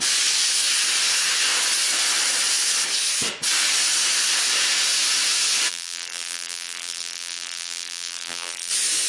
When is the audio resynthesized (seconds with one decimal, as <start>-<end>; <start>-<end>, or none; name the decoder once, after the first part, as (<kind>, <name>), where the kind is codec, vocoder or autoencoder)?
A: 5.7-8.7 (vocoder, BigVGAN v2)